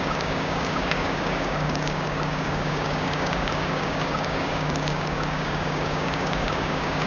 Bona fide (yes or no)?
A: no